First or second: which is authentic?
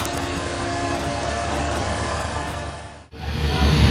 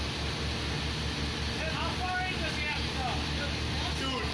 second